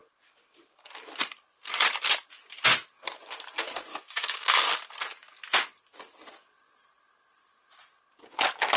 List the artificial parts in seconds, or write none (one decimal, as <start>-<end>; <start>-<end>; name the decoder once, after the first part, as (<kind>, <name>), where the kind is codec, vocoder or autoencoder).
3.9-4.6 (autoencoder, DAC-VAE)